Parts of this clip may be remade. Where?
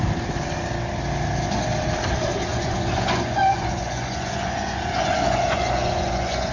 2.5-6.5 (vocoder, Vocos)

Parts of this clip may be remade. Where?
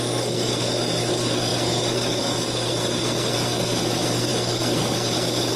0.0-5.6 (codec, SNAC)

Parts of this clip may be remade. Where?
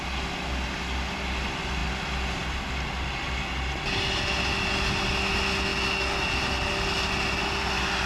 none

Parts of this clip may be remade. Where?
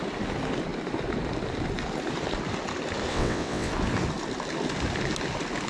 3.1-3.7 (vocoder, WaveNeXt)